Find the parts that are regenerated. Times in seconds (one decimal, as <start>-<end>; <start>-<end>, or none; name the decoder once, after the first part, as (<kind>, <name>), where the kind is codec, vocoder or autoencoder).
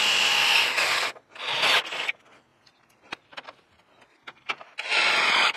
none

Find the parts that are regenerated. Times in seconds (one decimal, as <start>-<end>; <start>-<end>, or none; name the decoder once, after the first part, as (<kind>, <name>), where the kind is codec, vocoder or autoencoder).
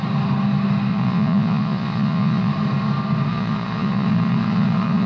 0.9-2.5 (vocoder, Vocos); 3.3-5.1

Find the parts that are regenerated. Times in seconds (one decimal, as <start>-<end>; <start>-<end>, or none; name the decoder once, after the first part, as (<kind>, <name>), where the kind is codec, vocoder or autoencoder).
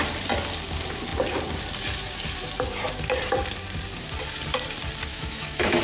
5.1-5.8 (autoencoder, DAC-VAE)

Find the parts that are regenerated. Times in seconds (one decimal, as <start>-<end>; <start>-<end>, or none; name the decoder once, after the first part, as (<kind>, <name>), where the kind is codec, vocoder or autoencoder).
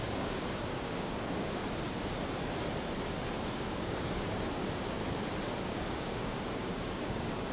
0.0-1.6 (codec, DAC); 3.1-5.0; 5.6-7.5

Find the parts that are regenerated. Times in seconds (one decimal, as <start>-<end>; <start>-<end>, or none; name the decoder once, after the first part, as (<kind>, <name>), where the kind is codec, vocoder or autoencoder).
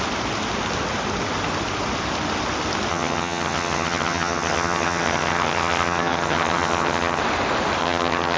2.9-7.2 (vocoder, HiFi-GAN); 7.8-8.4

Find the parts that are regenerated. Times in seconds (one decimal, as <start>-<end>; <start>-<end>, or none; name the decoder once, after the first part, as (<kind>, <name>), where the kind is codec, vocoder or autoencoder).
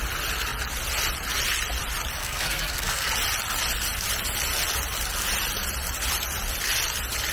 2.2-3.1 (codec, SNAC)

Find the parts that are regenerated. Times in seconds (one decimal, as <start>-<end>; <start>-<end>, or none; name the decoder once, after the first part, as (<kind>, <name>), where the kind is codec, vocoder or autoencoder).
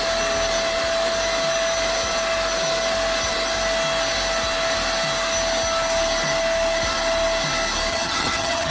7.9-8.7 (vocoder, HiFi-GAN)